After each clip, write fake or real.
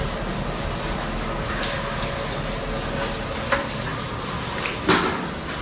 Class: real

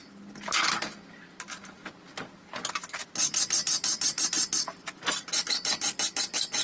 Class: real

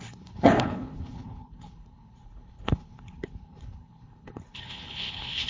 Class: fake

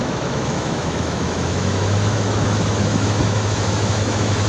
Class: fake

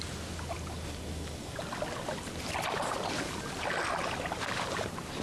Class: real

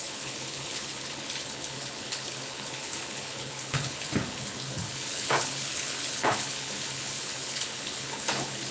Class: fake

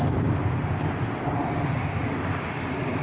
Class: real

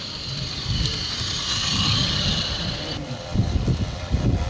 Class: fake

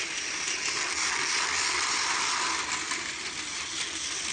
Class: real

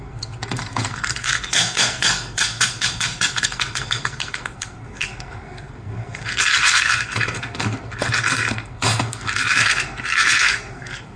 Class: fake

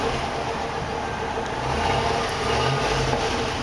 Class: real